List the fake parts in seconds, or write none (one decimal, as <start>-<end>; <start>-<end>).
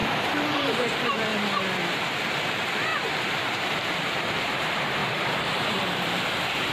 0.0-1.3; 1.8-6.7